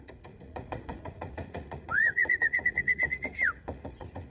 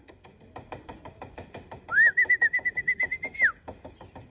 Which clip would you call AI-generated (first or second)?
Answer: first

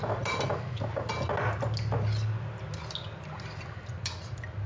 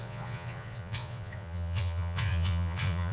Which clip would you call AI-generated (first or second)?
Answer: second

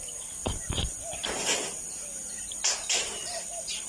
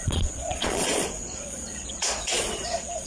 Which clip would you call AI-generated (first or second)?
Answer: second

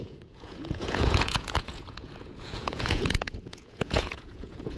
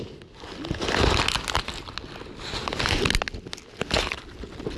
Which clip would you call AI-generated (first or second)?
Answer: first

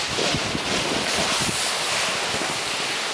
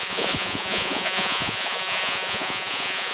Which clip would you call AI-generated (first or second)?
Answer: second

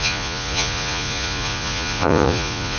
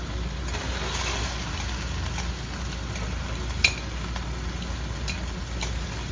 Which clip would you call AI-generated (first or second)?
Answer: first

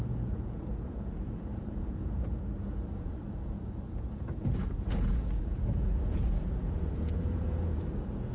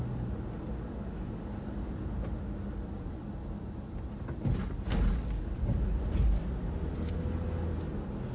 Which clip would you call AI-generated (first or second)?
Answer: first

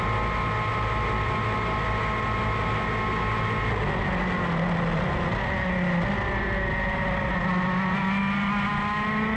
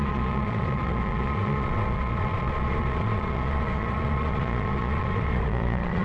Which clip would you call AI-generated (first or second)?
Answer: second